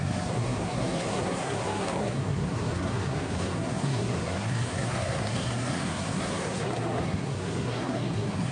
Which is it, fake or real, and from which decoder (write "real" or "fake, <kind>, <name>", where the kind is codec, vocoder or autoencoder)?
fake, codec, SNAC